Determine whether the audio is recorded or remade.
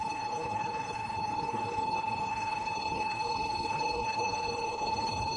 remade